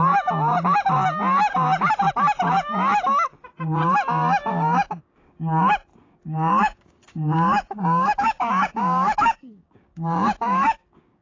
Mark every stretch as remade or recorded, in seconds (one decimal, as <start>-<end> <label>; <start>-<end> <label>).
0.0-4.5 recorded; 4.5-5.4 remade; 5.4-5.9 recorded; 5.9-11.2 remade